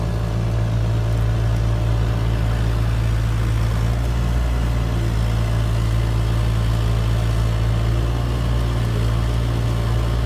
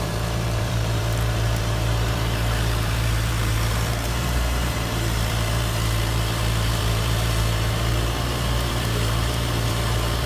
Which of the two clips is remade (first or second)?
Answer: second